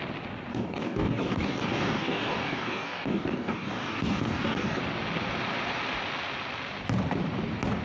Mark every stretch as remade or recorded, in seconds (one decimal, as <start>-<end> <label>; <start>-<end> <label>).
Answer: 0.0-0.5 recorded; 0.5-4.8 remade; 4.8-7.8 recorded